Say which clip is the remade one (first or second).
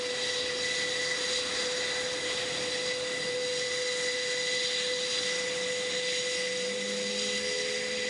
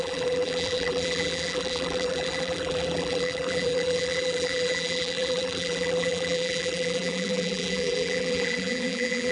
second